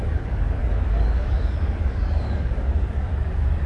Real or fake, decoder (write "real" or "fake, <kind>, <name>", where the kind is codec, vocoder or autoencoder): fake, codec, DAC